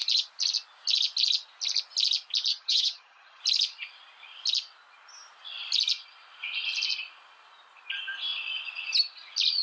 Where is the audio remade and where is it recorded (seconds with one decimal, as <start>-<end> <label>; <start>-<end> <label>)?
0.0-2.5 recorded; 2.5-3.4 remade; 3.4-9.6 recorded